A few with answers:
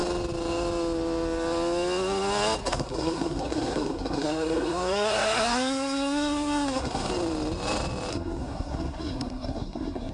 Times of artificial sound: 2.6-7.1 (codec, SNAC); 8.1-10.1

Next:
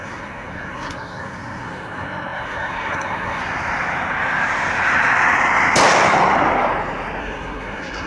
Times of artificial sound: 0.0-3.4 (codec, SNAC); 7.2-8.1

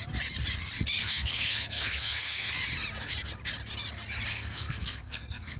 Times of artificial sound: 1.0-2.5 (codec, SNAC); 4.3-5.6

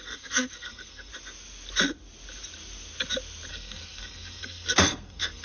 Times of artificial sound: 0.0-1.1 (codec, SNAC); 3.5-5.4

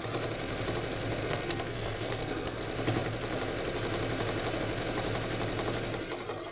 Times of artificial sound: 1.2-2.6 (codec, SNAC)

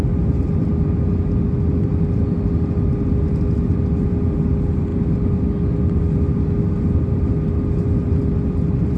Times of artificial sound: none

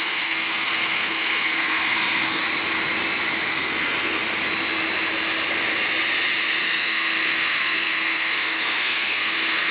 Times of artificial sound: 0.0-2.4 (codec, SNAC); 3.5-4.2; 6.6-9.7

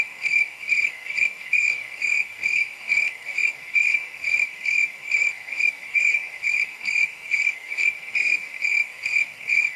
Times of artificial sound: 0.0-9.8 (codec, SNAC)